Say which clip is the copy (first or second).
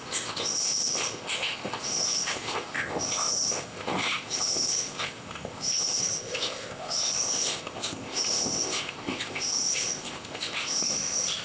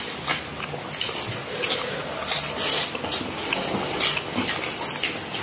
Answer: first